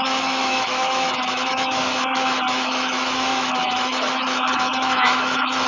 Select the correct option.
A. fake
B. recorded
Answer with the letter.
A